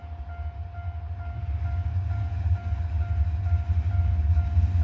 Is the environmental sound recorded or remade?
recorded